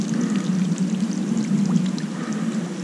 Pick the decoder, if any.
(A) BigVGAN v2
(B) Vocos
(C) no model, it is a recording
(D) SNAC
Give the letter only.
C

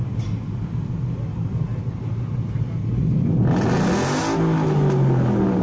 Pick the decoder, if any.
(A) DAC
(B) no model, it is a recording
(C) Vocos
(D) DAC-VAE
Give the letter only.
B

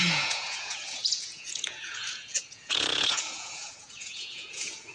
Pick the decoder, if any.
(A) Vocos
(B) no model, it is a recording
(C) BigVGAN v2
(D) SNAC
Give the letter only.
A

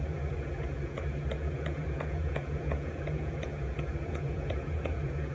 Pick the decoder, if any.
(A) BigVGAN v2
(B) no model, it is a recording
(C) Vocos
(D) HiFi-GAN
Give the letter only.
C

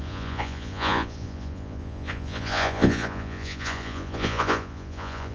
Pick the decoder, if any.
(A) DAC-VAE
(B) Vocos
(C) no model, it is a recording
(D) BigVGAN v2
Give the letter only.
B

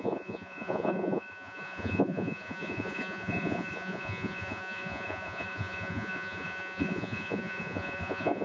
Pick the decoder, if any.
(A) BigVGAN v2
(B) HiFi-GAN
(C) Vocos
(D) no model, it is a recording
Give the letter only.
C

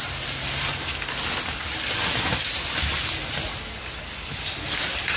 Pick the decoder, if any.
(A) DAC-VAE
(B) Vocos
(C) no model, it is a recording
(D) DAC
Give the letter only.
C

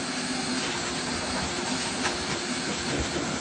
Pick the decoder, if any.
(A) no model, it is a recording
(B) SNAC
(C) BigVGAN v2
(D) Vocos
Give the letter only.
A